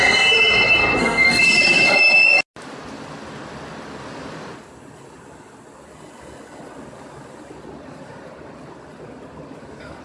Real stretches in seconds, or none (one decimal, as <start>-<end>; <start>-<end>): 0.0-0.8; 1.4-10.0